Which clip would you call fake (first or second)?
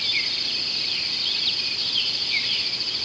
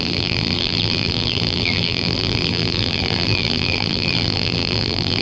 second